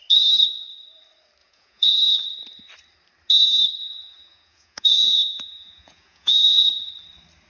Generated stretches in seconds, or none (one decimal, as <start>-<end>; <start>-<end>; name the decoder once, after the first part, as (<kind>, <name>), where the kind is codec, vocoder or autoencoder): 1.4-1.9 (vocoder, Vocos); 3.8-6.9